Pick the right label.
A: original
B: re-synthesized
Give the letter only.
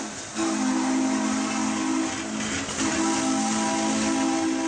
A